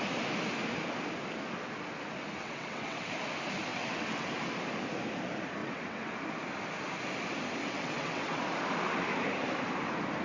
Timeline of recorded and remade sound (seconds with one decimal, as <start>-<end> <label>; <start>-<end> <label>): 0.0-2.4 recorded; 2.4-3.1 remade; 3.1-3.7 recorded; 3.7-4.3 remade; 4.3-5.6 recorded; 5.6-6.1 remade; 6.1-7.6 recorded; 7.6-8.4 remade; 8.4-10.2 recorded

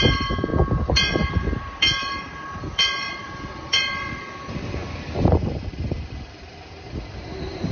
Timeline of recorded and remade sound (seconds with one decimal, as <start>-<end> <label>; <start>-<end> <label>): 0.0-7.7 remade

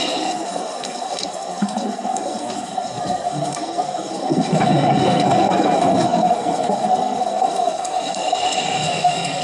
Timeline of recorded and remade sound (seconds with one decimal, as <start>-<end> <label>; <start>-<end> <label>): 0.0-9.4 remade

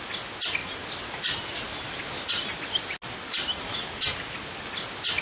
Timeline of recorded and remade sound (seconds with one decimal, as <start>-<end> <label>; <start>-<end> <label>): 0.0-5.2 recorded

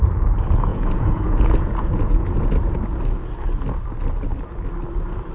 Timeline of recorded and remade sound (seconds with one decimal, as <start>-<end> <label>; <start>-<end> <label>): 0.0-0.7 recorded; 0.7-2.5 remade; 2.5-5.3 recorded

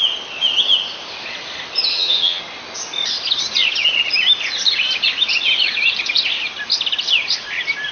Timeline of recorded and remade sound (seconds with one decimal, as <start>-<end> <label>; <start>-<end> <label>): 0.0-1.9 recorded; 1.9-2.4 remade; 2.4-7.9 recorded

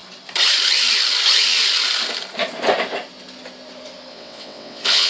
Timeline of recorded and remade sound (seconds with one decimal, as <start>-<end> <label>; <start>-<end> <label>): 0.0-4.1 recorded; 4.1-5.1 remade

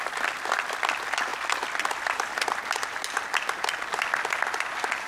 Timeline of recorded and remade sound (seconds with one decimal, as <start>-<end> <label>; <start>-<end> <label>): 0.0-5.1 recorded